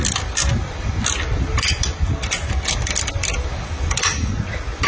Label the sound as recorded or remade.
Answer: recorded